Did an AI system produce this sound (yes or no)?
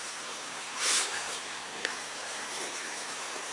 yes